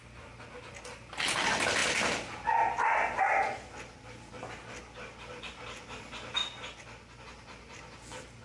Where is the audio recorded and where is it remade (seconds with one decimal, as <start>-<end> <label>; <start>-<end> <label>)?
0.0-8.4 recorded